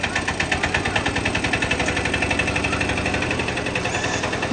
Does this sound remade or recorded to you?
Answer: recorded